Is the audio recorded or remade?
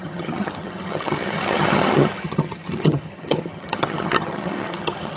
remade